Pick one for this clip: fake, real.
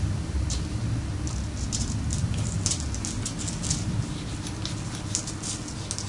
real